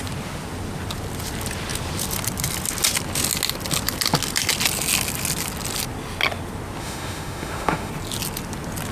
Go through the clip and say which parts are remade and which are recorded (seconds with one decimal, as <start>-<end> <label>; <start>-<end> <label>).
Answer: 0.0-6.8 recorded; 6.8-7.9 remade; 7.9-8.9 recorded